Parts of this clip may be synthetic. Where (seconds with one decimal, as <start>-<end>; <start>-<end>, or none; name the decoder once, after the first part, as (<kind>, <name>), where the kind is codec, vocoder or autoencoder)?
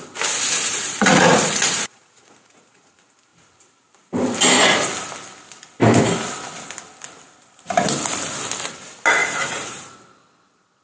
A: 0.7-2.9 (vocoder, Vocos); 9.2-9.9